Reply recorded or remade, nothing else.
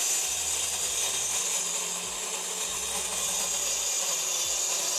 recorded